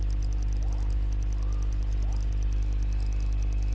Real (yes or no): yes